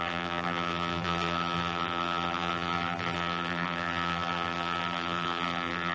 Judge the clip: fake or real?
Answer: fake